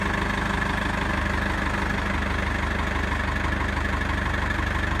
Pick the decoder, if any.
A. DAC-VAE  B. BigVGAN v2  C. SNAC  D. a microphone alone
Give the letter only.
D